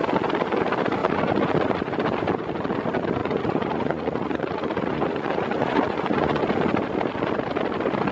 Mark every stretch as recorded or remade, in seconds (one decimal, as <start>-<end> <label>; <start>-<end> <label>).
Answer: 0.0-1.0 recorded; 1.0-1.9 remade; 1.9-3.2 recorded; 3.2-6.4 remade; 6.4-8.1 recorded